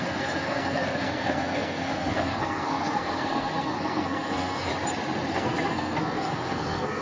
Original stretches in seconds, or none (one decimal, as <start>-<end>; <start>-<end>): 4.7-5.3